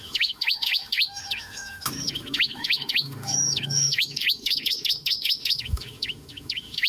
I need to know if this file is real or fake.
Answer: fake